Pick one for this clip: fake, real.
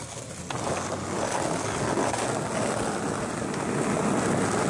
real